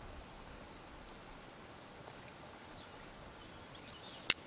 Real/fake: real